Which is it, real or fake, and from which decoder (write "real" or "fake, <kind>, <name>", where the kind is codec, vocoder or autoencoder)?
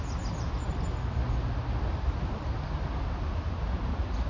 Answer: real